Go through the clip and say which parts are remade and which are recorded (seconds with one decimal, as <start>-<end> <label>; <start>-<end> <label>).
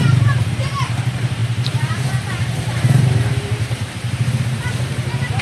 0.0-5.4 remade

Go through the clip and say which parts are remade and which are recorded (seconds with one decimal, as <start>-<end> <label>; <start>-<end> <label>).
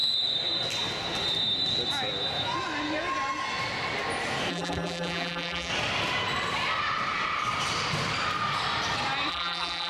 0.0-4.5 recorded; 4.5-5.7 remade; 5.7-9.3 recorded; 9.3-9.9 remade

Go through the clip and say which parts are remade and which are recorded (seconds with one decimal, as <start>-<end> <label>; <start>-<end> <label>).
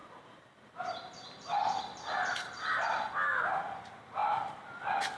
0.0-3.1 remade; 3.1-4.2 recorded; 4.2-4.8 remade; 4.8-5.2 recorded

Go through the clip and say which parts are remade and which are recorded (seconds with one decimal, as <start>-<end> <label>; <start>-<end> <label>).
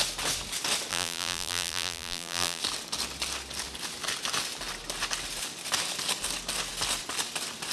0.0-0.9 recorded; 0.9-2.6 remade; 2.6-7.7 recorded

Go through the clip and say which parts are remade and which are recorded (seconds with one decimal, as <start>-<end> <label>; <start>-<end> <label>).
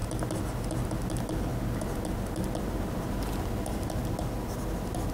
0.0-5.1 recorded